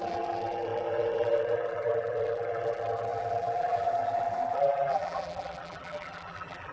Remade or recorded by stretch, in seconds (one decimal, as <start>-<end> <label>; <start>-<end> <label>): 0.0-6.7 remade